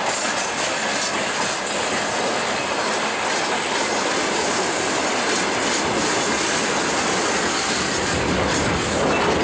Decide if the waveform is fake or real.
real